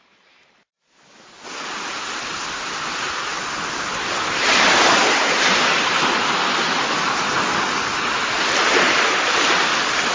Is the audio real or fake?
real